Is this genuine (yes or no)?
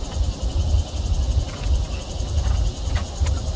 yes